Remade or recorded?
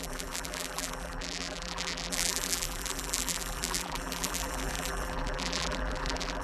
remade